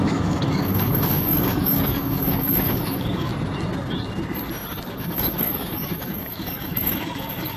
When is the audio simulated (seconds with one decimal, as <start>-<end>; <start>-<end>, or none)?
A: 0.0-3.3; 4.9-7.6